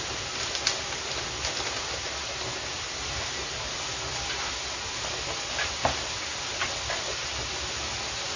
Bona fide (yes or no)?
yes